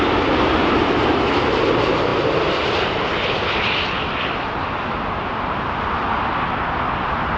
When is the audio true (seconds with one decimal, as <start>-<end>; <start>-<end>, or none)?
0.0-7.4